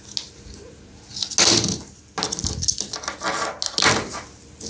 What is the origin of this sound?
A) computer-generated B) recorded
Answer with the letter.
B